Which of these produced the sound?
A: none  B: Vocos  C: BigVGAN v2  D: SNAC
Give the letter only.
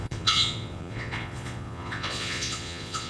B